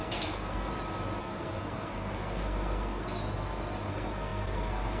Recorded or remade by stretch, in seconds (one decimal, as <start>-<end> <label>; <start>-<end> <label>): 0.0-0.7 remade; 0.7-1.2 recorded; 1.2-3.2 remade; 3.2-3.9 recorded; 3.9-5.0 remade